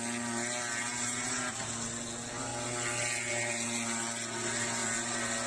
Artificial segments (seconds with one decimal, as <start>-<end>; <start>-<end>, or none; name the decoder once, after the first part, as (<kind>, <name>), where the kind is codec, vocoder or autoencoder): none